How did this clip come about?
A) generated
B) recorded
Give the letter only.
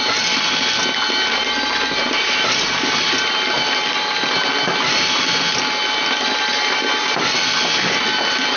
B